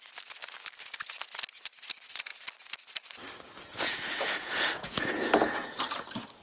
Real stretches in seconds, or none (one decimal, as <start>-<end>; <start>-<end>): 0.0-3.7; 5.8-6.4